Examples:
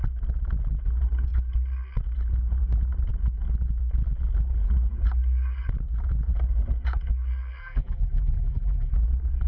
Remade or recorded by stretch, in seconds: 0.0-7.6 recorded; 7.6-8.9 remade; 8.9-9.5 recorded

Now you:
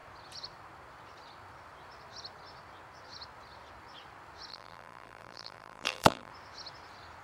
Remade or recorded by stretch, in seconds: 0.0-4.5 recorded; 4.5-6.3 remade; 6.3-7.2 recorded

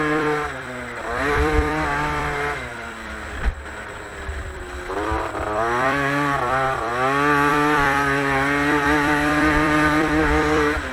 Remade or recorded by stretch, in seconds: 0.0-6.9 remade; 6.9-7.5 recorded; 7.5-10.9 remade